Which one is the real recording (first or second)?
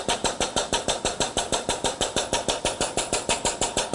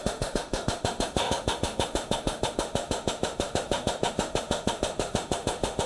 first